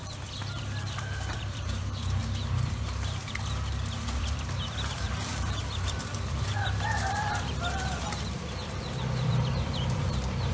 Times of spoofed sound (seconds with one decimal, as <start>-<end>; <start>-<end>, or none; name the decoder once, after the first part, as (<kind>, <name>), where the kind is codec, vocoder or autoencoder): 0.0-10.5 (vocoder, BigVGAN v2)